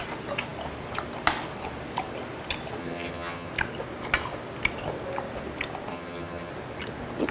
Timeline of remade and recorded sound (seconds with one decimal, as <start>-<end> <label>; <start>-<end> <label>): 0.0-2.8 recorded; 2.8-3.5 remade; 3.5-5.9 recorded; 5.9-6.5 remade; 6.5-7.3 recorded